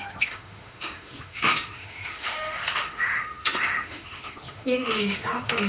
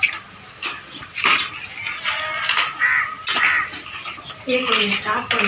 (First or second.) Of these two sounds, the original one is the second